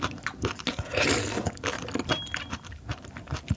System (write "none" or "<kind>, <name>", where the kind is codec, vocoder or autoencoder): none